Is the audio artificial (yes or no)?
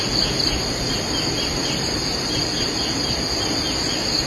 no